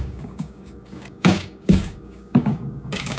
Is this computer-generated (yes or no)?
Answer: yes